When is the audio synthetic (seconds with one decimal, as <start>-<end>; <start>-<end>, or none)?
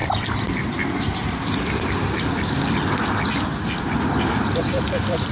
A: 3.0-5.3